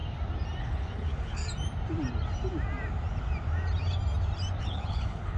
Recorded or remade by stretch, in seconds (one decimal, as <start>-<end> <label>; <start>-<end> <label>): 0.0-0.6 recorded; 0.6-1.4 remade; 1.4-4.6 recorded; 4.6-5.4 remade